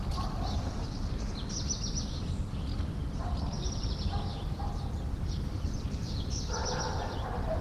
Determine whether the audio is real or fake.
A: real